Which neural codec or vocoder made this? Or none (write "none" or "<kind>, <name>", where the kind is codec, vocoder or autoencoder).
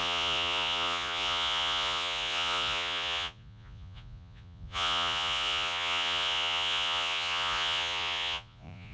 vocoder, Vocos